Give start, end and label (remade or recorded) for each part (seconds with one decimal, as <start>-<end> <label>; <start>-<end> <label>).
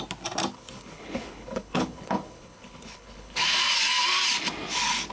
0.0-0.5 recorded; 0.5-3.4 remade; 3.4-5.1 recorded